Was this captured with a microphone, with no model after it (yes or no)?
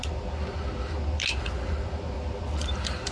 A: yes